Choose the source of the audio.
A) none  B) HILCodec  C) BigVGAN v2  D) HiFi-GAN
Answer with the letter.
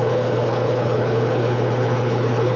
B